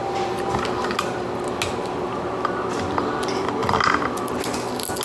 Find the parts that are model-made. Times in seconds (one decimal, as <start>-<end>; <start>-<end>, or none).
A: none